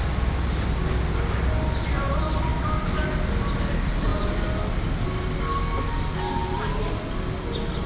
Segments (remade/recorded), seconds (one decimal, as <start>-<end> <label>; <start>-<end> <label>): 0.0-7.9 recorded

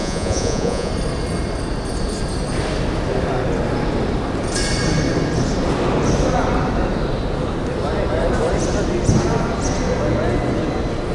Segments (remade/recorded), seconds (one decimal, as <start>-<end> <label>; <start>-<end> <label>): 0.0-0.9 remade; 0.9-11.1 recorded